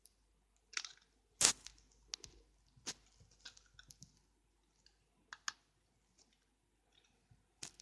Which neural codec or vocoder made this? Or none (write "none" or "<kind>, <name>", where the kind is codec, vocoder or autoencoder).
none